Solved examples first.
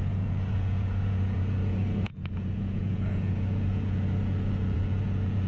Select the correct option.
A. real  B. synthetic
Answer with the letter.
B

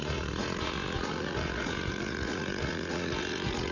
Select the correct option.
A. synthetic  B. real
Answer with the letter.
A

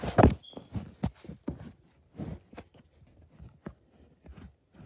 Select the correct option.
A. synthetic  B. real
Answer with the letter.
B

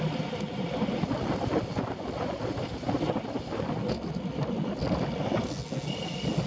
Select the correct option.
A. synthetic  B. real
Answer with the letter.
B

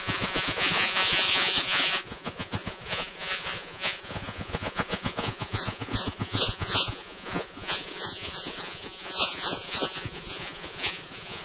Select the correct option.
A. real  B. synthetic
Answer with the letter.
B